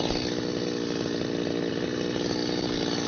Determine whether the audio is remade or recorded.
recorded